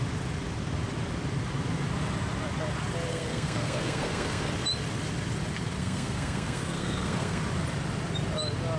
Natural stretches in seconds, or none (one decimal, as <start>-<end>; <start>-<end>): 0.0-3.1; 4.5-5.8; 7.4-8.8